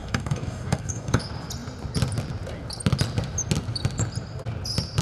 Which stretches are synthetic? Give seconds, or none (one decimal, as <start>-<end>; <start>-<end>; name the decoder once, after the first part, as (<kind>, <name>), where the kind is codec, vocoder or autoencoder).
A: 0.0-1.2 (codec, DAC)